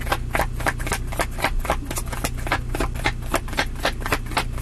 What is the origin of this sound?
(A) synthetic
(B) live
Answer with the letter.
B